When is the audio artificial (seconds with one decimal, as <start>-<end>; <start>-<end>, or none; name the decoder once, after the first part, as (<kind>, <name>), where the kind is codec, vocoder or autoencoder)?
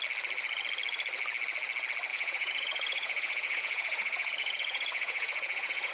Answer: 2.1-5.9 (vocoder, Vocos)